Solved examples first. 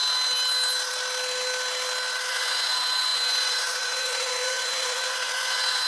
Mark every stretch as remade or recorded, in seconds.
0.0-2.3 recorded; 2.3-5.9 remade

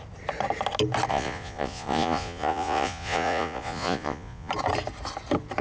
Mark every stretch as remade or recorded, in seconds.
0.0-1.1 recorded; 1.1-4.5 remade; 4.5-5.6 recorded